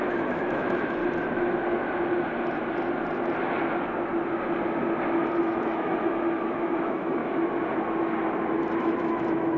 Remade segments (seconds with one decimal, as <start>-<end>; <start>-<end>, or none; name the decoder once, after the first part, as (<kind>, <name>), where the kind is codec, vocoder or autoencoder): 0.0-1.0 (autoencoder, DAC-VAE); 5.4-7.2; 8.8-9.6